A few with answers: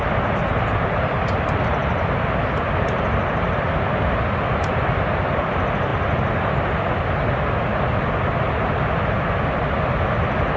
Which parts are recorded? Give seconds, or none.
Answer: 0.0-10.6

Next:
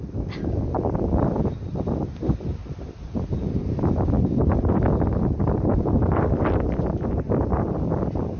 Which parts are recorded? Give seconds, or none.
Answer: 0.0-2.6; 7.2-8.4

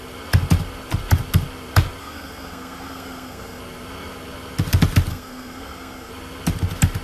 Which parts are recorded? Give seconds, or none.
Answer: 0.0-2.0; 3.6-5.1; 6.1-7.0

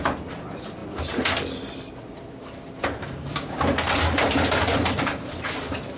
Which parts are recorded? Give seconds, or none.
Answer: 0.0-3.0; 3.6-6.0

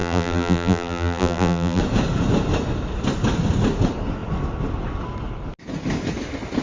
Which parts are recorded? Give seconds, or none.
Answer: 1.8-6.6

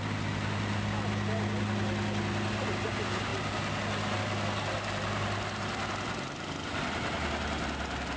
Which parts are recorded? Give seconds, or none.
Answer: 0.0-8.2

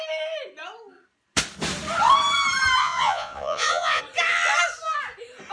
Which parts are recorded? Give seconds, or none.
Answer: 0.0-2.8; 4.0-5.5